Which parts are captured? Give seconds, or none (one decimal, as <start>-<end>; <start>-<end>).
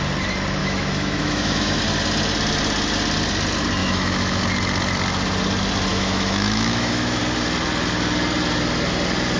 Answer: 0.0-0.6; 1.8-3.8; 4.4-5.9; 7.2-9.4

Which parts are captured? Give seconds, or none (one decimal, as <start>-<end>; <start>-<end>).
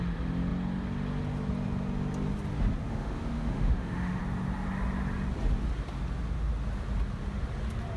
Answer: 0.0-2.8; 4.2-8.0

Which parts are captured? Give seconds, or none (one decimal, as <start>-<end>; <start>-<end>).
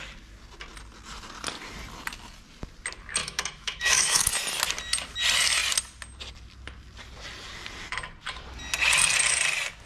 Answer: 0.0-3.2; 4.3-9.9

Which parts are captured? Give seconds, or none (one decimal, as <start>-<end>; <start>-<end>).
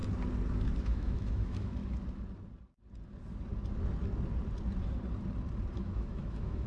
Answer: 0.0-0.8; 1.8-5.8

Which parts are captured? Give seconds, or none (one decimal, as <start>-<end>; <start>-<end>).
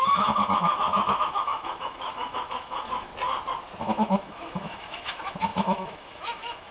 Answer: 3.1-3.8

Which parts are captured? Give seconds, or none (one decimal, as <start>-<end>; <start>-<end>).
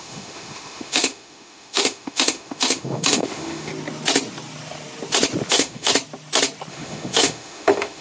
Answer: 3.7-5.5; 5.9-6.7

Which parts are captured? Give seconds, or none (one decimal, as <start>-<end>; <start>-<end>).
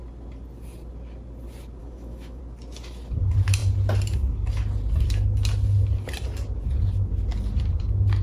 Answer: 0.0-1.8; 2.4-8.2